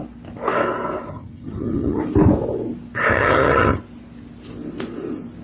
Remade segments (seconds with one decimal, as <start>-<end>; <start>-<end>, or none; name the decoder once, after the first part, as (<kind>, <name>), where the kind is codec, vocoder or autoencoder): 1.1-2.0 (vocoder, HiFi-GAN); 3.1-3.8